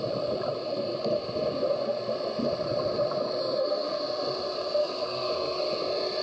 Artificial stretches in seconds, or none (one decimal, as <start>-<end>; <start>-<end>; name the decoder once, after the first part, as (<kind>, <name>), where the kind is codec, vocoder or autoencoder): 3.4-4.0 (codec, SNAC); 4.8-5.6